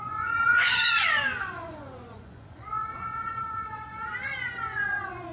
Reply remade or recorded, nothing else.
remade